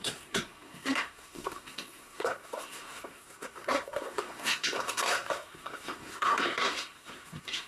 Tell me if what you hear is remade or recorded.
remade